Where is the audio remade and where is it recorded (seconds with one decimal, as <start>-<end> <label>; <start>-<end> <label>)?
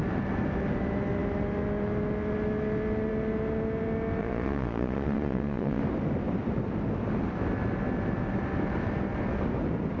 0.0-4.2 recorded; 4.2-5.8 remade; 5.8-10.0 recorded